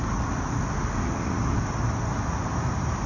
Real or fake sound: real